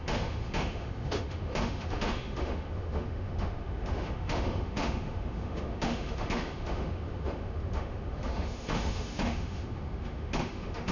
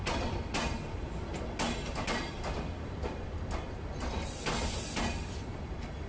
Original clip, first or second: second